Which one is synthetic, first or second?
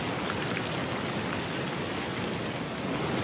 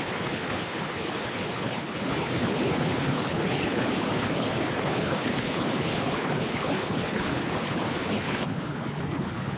second